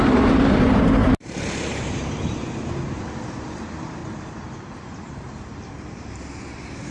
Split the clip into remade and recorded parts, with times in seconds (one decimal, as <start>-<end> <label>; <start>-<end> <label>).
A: 0.0-1.0 recorded; 1.0-3.0 remade; 3.0-4.0 recorded; 4.0-6.2 remade; 6.2-6.9 recorded